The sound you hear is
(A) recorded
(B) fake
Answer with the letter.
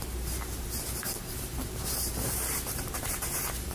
B